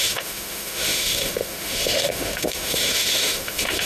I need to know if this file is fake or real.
fake